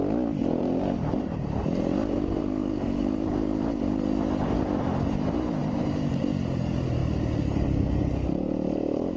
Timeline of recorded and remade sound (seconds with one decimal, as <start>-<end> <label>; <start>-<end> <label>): 0.0-0.4 recorded; 0.4-2.4 remade; 2.4-5.6 recorded; 5.6-6.2 remade; 6.2-9.2 recorded